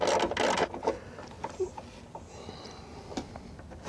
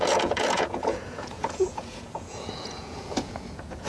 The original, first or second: first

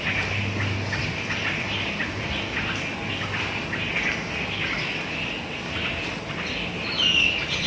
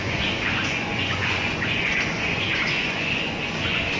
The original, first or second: first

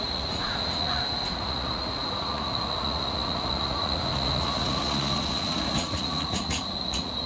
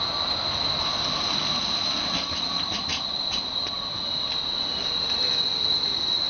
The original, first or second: second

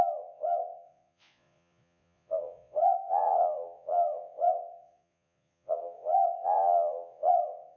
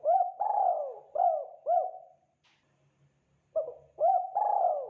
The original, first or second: second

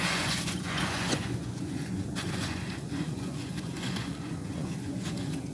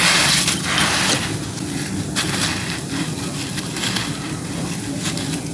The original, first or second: second